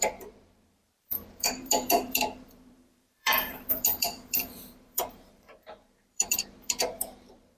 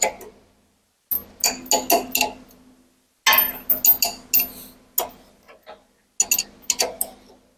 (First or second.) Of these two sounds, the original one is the second